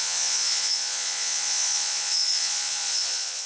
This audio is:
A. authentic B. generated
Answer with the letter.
B